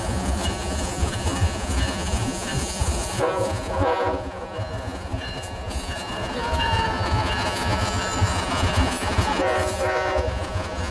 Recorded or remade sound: remade